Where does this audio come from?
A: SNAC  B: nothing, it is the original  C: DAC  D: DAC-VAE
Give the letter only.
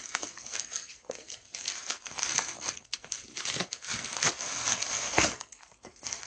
A